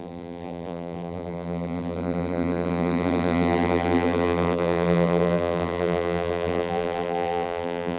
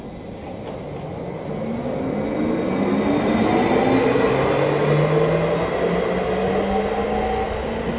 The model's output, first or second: first